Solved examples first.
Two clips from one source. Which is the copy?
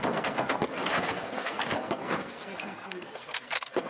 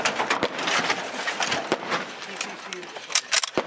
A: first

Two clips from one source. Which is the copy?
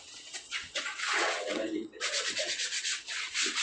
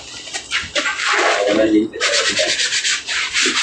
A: first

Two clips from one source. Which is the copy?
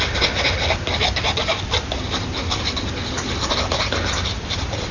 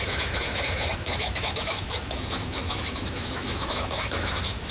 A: second